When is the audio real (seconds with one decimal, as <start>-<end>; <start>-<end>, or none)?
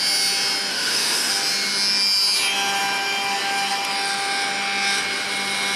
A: 0.0-0.7; 1.3-5.8